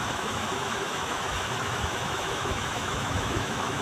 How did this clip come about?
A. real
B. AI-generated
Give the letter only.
B